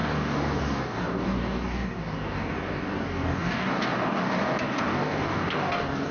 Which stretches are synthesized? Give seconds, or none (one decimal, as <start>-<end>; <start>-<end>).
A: 0.0-6.1